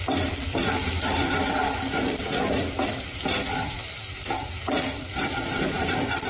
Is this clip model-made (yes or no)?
yes